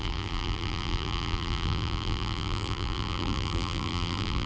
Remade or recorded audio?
remade